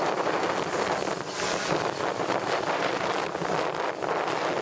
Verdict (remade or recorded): recorded